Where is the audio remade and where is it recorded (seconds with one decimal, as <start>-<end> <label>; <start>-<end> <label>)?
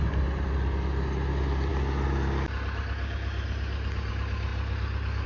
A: 0.0-5.3 recorded